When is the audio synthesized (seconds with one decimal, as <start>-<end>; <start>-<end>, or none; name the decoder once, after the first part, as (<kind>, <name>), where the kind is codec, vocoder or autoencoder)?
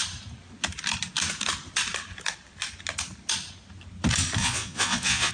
4.4-5.3 (vocoder, Vocos)